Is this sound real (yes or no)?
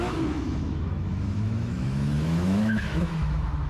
no